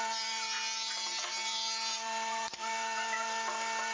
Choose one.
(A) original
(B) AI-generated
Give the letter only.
B